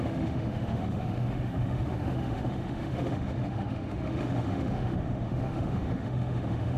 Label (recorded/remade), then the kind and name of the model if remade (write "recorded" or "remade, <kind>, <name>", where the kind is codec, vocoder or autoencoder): remade, autoencoder, DAC-VAE